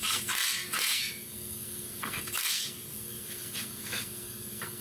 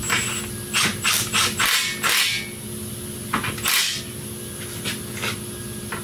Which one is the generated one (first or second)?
first